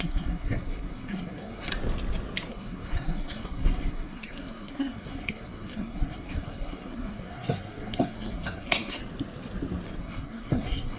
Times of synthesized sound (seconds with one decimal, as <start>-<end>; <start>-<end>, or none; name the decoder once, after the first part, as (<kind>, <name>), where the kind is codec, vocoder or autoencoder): 0.0-1.7 (codec, SNAC); 2.5-9.0; 10.0-11.0